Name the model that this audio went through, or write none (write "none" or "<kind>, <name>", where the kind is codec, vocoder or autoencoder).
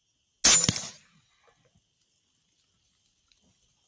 none